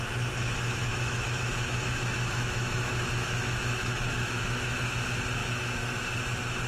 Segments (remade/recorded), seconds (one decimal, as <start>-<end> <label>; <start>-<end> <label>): 0.0-0.9 recorded; 0.9-4.8 remade; 4.8-5.4 recorded; 5.4-6.0 remade; 6.0-6.7 recorded